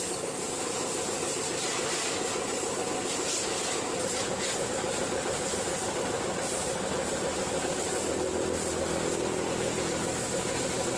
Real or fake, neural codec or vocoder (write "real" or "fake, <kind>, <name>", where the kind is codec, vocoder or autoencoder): real